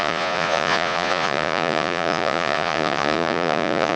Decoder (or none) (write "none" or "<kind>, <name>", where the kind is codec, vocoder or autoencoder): vocoder, Vocos